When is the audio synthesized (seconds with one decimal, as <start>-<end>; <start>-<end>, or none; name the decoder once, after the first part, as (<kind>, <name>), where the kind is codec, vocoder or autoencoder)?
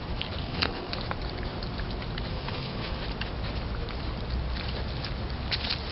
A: 0.4-0.9 (codec, SNAC); 2.3-3.0